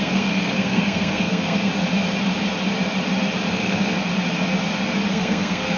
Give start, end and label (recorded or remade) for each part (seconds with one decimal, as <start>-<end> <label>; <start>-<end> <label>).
0.0-1.7 remade; 1.7-3.5 recorded; 3.5-4.0 remade; 4.0-5.1 recorded; 5.1-5.8 remade